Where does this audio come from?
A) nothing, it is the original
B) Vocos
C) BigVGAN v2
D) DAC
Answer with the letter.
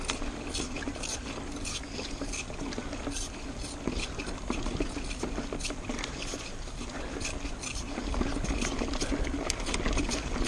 A